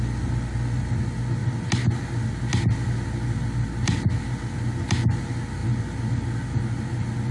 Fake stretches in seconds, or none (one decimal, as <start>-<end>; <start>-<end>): none